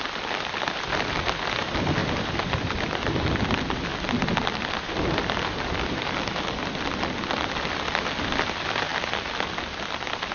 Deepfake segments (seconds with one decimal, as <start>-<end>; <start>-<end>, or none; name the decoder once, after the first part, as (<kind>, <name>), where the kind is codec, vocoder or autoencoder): 0.0-8.9 (vocoder, BigVGAN v2)